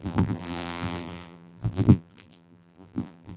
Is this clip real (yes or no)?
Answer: no